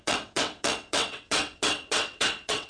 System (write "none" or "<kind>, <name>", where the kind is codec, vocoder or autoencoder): vocoder, WaveNeXt